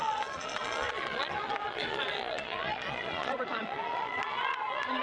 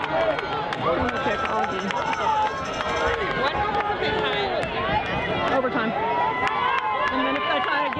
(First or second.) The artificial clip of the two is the first